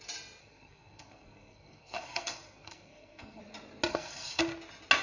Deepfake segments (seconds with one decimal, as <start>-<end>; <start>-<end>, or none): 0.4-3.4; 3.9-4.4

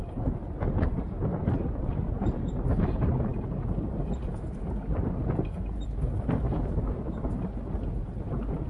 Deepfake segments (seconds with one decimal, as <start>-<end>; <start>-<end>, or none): 0.0-8.7

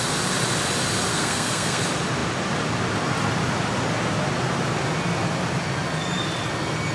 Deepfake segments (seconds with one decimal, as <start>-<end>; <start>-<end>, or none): 1.1-1.8

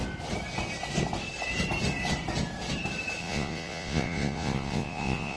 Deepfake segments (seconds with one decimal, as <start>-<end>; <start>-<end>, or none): 3.2-5.4

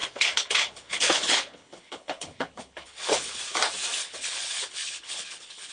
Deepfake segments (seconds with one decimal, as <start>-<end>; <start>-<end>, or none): 0.0-3.4; 4.0-5.7

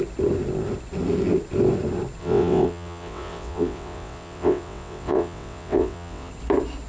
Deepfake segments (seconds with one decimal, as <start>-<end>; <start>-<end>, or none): 2.2-6.3

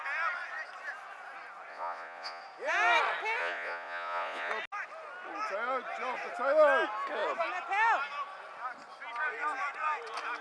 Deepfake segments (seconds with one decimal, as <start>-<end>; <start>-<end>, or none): 1.7-2.4; 3.4-4.5

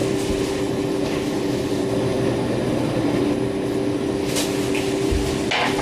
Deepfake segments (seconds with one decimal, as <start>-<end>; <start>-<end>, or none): none